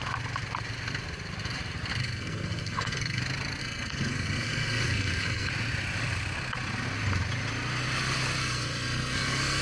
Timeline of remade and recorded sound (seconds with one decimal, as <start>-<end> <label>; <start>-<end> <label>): 0.0-2.0 recorded; 2.0-3.2 remade; 3.2-3.6 recorded; 3.6-5.5 remade; 5.5-8.4 recorded; 8.4-9.6 remade

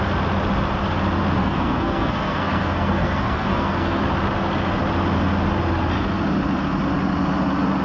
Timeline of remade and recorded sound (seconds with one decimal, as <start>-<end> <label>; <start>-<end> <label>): 0.0-1.4 recorded; 1.4-4.0 remade; 4.0-7.8 recorded

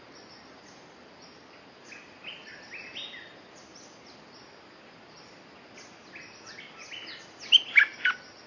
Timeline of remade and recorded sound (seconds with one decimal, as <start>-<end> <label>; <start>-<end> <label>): 0.0-8.5 recorded

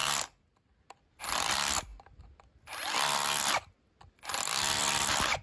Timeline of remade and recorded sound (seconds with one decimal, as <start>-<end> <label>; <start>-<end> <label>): 0.0-5.4 recorded

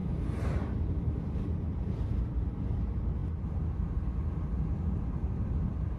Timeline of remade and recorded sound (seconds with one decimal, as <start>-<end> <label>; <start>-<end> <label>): 0.0-6.0 recorded

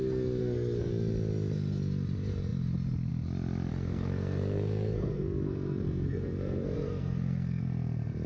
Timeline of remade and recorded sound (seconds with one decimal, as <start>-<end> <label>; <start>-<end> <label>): 0.0-0.4 recorded; 0.4-0.9 remade; 0.9-3.7 recorded; 3.7-7.6 remade; 7.6-8.3 recorded

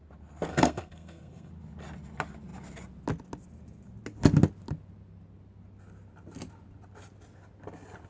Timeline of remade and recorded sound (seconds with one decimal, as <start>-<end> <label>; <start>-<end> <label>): 0.0-0.5 recorded; 0.5-1.5 remade; 1.5-8.1 recorded